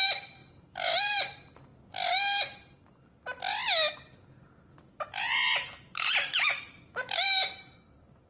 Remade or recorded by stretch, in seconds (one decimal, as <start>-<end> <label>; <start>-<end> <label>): 0.0-1.7 remade; 1.7-4.8 recorded; 4.8-8.3 remade